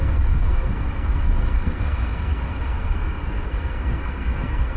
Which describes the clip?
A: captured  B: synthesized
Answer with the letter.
B